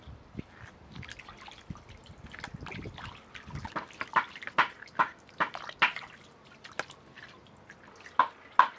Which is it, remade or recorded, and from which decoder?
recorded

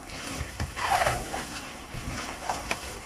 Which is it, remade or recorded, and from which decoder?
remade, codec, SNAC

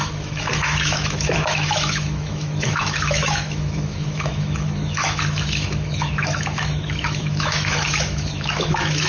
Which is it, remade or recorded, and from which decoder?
remade, autoencoder, DAC-VAE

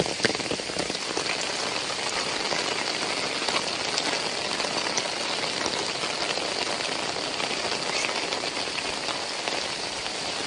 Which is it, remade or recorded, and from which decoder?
recorded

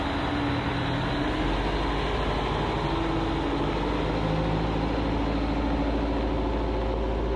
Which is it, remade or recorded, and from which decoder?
recorded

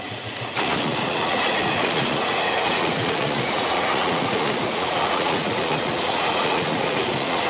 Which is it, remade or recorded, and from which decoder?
remade, vocoder, Vocos